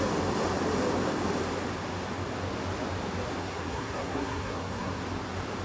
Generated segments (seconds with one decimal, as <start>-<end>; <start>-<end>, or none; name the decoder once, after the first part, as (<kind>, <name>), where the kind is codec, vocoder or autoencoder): 3.4-5.0 (codec, SNAC)